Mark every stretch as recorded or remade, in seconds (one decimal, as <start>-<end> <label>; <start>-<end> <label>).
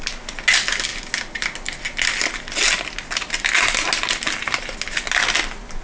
0.0-5.8 recorded